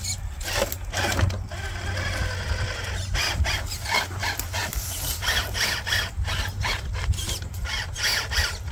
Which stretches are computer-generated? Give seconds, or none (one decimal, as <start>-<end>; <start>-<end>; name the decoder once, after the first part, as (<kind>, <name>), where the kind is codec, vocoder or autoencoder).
3.2-7.7 (vocoder, BigVGAN v2)